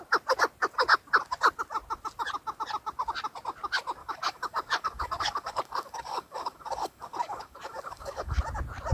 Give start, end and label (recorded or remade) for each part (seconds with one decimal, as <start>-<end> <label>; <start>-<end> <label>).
0.0-4.0 recorded; 4.0-8.4 remade; 8.4-8.9 recorded

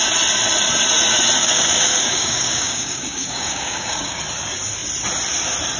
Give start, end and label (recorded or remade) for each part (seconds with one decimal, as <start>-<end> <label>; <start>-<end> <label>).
0.0-1.4 recorded; 1.4-4.2 remade; 4.2-5.8 recorded

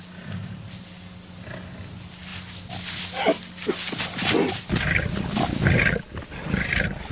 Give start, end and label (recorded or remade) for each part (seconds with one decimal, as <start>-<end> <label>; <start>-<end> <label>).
0.0-7.1 recorded

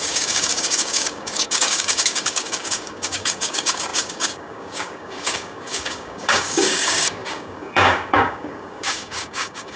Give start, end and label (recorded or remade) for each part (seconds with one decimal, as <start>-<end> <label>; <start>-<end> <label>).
0.0-9.8 remade

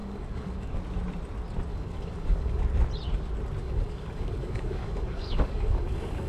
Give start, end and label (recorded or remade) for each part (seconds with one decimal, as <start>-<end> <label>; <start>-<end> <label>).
0.0-0.8 remade; 0.8-1.7 recorded; 1.7-2.6 remade; 2.6-3.6 recorded; 3.6-6.3 remade

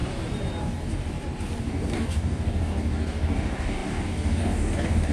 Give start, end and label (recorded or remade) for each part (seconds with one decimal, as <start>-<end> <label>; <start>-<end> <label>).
0.0-0.6 recorded; 0.6-1.0 remade; 1.0-1.6 recorded; 1.6-5.1 remade

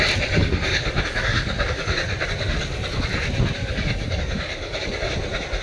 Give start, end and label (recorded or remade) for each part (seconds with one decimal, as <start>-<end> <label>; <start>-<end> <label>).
0.0-0.4 recorded; 0.4-1.9 remade; 1.9-3.6 recorded; 3.6-5.1 remade; 5.1-5.6 recorded